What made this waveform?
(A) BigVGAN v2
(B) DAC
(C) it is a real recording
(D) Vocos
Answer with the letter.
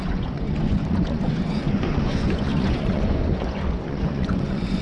D